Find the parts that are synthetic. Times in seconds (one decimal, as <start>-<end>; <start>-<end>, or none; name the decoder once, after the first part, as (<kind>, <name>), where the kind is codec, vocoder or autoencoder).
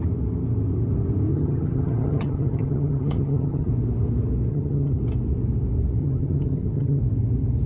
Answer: 1.3-3.7 (vocoder, HiFi-GAN); 4.5-5.0; 6.0-7.0